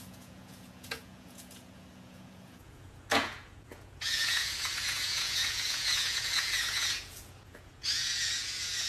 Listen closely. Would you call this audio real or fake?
fake